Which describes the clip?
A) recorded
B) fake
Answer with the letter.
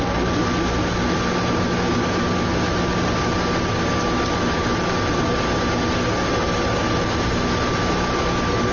A